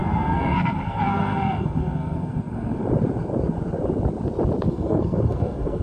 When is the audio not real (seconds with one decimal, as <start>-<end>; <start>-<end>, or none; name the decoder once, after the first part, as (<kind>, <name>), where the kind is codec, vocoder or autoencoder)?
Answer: 0.0-2.8 (codec, SNAC); 4.7-5.8